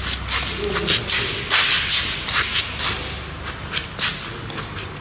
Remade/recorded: recorded